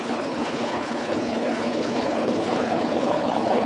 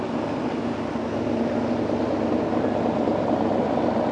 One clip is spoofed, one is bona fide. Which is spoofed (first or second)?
first